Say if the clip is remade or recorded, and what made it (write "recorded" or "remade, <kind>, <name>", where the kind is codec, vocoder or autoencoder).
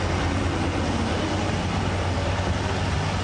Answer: recorded